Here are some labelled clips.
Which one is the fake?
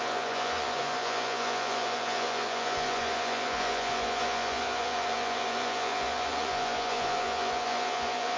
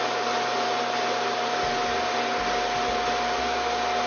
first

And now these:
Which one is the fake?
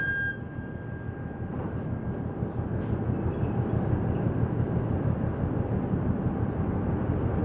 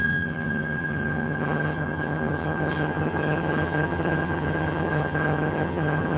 second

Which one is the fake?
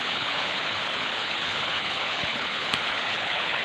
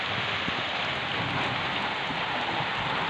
first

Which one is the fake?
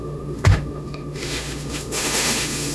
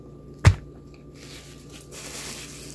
first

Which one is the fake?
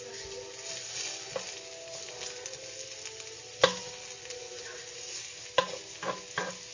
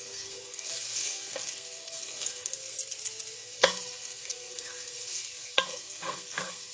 second